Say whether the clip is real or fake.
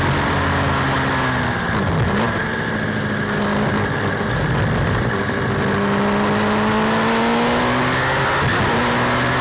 real